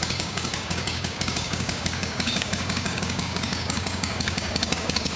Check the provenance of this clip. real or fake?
fake